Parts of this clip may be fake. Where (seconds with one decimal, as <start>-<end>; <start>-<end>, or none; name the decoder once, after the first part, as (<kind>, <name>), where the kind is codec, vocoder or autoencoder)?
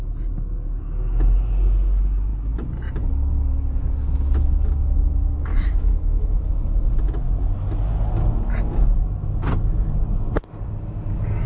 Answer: 5.5-6.5 (autoencoder, DAC-VAE)